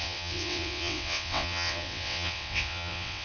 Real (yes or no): no